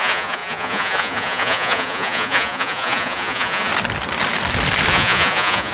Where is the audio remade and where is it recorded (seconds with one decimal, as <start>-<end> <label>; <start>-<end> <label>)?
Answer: 0.0-3.7 remade; 3.7-4.9 recorded; 4.9-5.7 remade